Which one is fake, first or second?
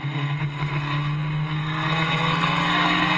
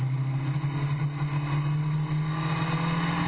first